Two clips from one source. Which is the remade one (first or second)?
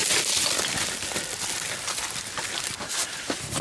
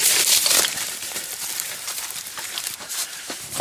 second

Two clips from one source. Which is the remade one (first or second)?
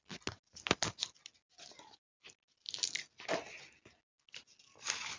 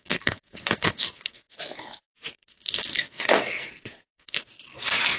second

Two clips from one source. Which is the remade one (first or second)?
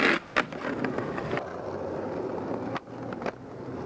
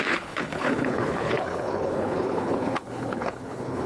second